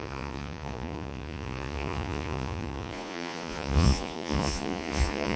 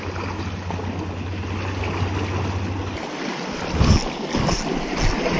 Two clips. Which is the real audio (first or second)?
second